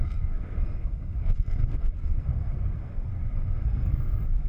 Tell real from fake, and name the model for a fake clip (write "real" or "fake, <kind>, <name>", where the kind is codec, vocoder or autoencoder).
fake, codec, SNAC